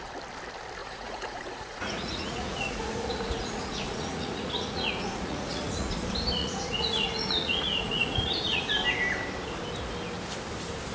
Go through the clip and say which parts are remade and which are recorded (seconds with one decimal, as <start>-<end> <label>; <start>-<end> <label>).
0.0-0.8 recorded; 0.8-5.9 remade; 5.9-6.4 recorded; 6.4-8.7 remade; 8.7-10.9 recorded